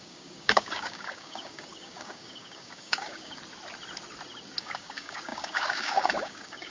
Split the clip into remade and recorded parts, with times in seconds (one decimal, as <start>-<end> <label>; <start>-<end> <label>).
0.0-3.4 remade; 3.4-4.6 recorded; 4.6-6.7 remade